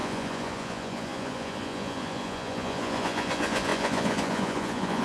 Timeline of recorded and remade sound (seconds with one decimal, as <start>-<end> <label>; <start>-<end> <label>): 0.0-5.0 remade